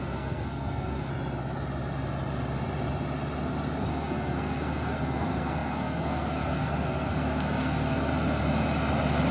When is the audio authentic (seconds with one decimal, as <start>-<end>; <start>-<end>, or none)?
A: 1.1-3.9; 8.1-9.3